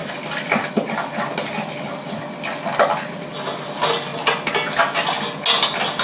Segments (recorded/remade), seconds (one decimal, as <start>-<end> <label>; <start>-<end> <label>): 0.0-6.0 recorded